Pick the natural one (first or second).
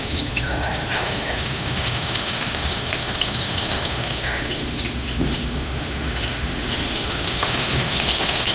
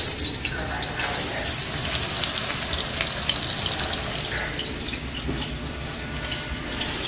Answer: second